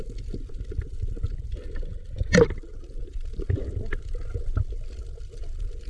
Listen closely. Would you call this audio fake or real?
real